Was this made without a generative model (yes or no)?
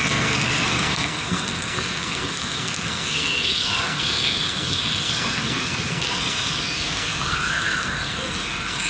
no